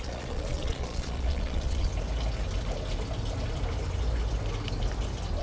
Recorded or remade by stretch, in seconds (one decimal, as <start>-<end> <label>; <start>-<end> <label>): 0.0-1.9 remade; 1.9-5.4 recorded